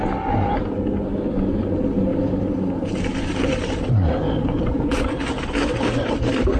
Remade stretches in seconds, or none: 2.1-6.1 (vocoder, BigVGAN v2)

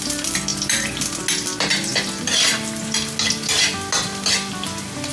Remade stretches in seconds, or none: 0.5-1.2 (vocoder, BigVGAN v2)

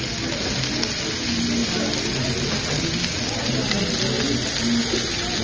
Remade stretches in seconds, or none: none

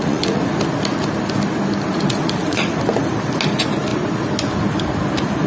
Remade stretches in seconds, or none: 0.0-0.5 (vocoder, Vocos); 1.9-2.8

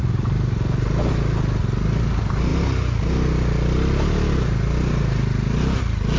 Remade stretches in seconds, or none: none

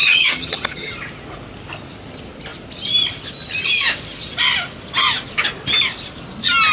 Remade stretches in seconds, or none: 0.0-0.9 (vocoder, HiFi-GAN)